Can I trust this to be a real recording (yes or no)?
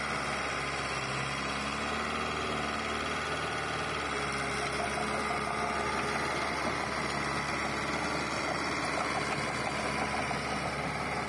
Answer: yes